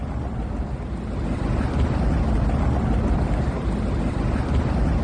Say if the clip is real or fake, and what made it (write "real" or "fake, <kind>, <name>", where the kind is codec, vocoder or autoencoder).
real